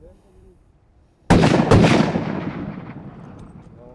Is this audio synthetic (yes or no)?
no